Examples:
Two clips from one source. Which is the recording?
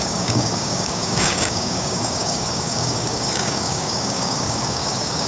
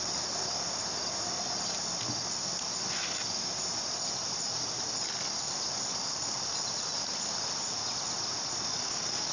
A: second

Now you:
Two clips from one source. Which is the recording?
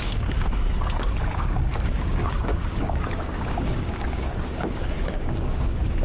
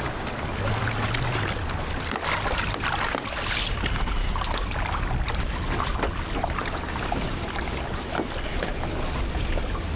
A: second